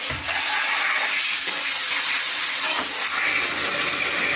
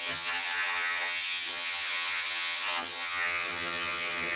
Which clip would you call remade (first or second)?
second